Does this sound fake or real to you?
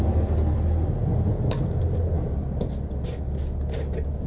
real